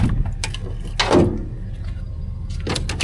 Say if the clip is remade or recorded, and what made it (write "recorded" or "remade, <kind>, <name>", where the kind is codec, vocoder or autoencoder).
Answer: recorded